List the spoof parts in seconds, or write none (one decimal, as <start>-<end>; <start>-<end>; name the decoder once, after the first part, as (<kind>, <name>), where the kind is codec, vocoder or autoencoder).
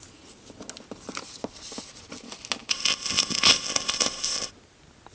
2.7-4.5 (codec, ZipCodec)